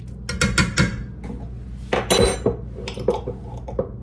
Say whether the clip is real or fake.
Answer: real